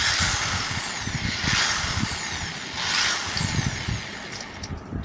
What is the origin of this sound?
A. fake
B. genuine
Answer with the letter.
B